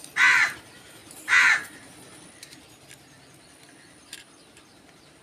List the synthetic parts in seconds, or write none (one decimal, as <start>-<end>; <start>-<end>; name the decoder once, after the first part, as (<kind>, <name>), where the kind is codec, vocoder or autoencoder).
none